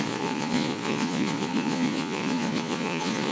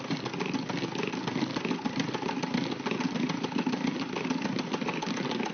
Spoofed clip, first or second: first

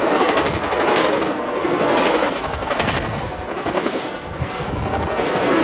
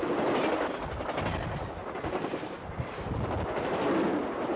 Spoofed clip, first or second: first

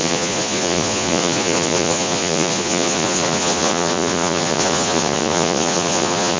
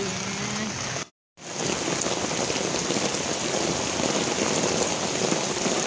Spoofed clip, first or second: first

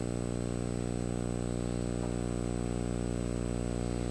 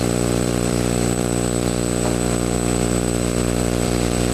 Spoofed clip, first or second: second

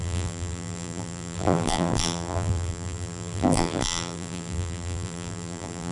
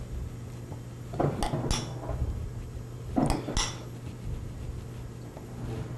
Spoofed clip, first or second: first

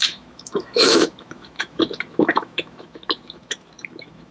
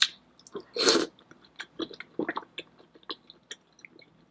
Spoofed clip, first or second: first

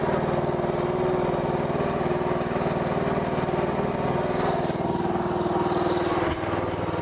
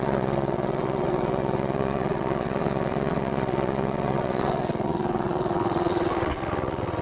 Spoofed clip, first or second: second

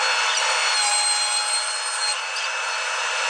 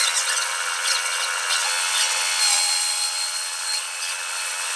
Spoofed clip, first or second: second